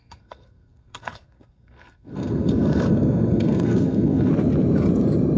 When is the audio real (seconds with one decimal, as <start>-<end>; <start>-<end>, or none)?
4.3-5.4